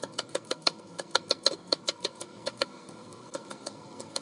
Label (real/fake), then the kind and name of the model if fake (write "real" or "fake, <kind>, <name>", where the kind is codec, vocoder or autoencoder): fake, codec, SNAC